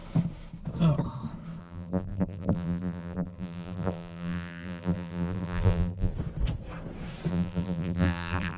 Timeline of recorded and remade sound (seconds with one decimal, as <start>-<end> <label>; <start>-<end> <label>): 0.0-1.6 recorded; 1.6-6.1 remade; 6.1-7.3 recorded; 7.3-8.6 remade